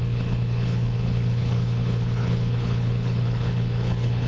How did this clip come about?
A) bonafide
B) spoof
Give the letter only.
B